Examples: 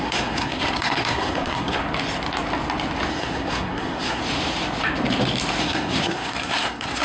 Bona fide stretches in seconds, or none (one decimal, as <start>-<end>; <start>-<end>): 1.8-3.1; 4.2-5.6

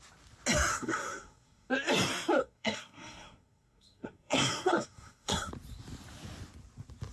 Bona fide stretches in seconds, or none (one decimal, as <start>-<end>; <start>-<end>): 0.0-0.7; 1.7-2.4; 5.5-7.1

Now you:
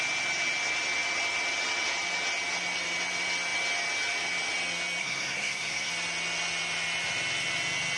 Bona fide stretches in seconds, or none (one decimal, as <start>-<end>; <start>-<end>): 0.0-5.0; 5.9-8.0

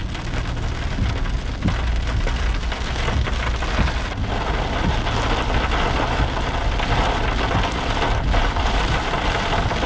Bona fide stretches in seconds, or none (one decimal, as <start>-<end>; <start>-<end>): 0.0-9.9

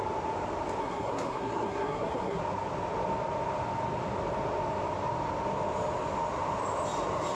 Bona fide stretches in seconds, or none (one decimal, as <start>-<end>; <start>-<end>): 0.0-0.8; 2.4-7.4

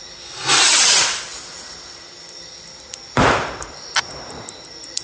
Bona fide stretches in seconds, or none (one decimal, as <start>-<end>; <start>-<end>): 0.0-5.0

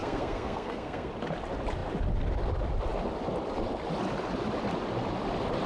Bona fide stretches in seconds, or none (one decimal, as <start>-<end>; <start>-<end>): 1.1-5.7